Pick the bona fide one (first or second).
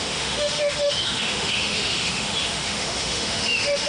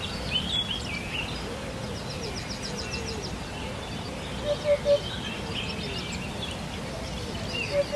second